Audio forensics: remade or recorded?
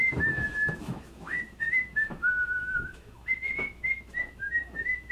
remade